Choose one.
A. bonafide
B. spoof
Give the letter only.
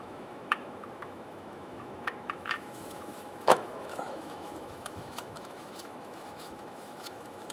B